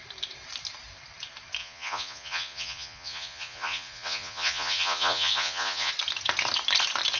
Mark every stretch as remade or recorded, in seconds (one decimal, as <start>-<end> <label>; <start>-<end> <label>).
0.0-1.6 recorded; 1.6-5.9 remade; 5.9-7.2 recorded